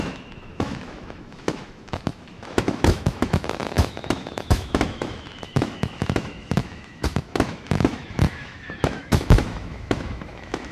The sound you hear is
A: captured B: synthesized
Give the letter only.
B